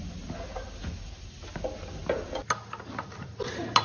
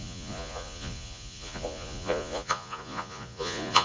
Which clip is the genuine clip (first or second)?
first